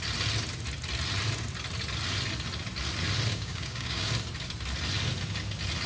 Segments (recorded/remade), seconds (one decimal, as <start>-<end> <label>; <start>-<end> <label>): 0.0-3.3 recorded; 3.3-4.1 remade; 4.1-5.9 recorded